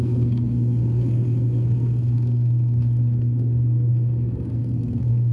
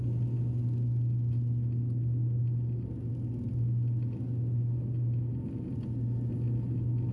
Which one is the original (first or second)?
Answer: second